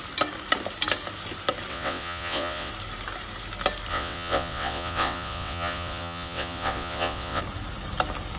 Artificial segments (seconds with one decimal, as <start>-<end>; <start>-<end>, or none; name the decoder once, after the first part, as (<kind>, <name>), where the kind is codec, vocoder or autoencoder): 1.7-2.7 (vocoder, WaveNeXt); 3.9-7.4